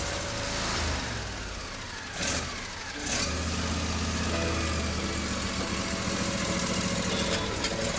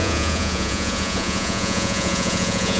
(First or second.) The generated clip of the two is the second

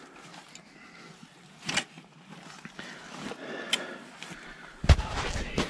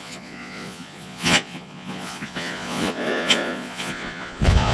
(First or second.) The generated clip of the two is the second